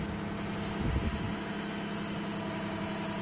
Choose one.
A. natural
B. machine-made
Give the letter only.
A